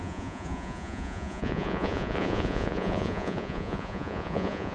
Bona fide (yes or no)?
no